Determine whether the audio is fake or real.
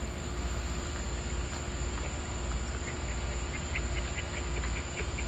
real